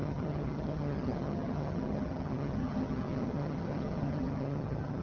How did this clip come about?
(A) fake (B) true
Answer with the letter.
A